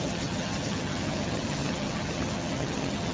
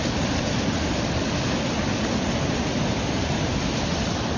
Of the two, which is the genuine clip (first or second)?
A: second